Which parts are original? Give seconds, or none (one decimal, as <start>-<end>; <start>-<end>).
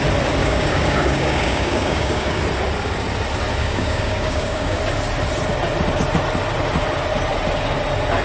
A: 0.0-0.4; 2.4-3.6; 4.8-8.2